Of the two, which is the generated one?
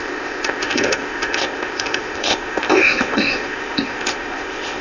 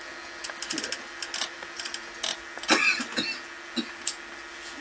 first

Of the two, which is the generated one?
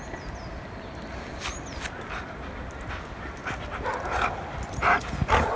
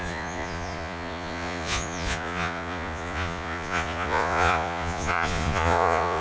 second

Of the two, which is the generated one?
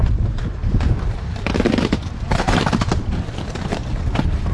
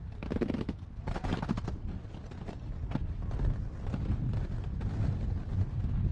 first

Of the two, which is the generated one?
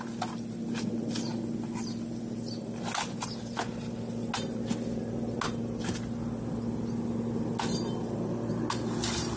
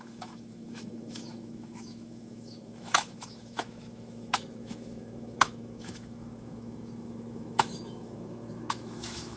second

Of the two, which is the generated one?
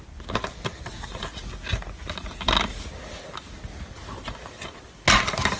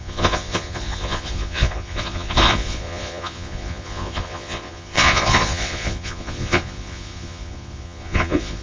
second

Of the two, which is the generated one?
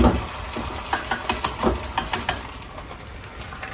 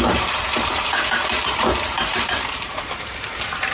second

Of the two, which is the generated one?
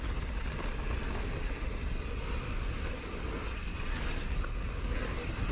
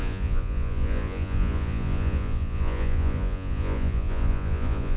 second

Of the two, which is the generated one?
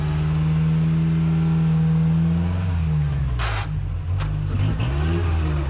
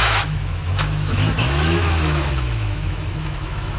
second